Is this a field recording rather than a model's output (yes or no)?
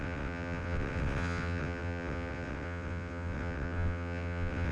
no